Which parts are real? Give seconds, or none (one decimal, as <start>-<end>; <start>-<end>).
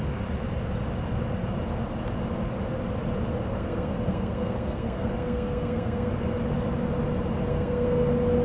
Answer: 0.0-3.6; 6.1-7.5; 8.0-8.4